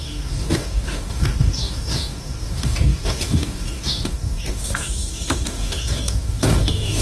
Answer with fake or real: fake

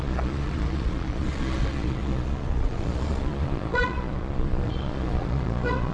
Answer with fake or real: fake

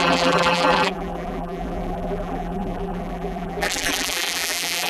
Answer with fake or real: fake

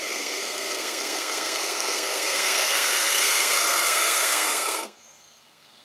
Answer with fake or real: fake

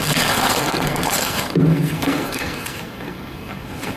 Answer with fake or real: fake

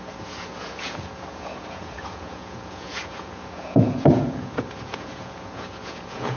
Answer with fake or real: fake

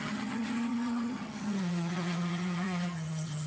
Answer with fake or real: fake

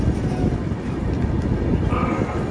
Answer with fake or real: real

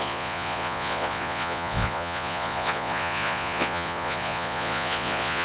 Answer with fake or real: fake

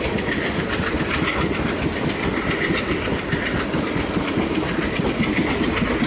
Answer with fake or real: real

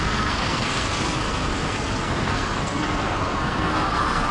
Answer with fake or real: fake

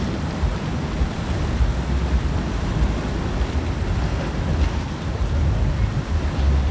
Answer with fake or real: real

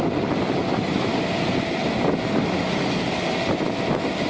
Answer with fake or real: real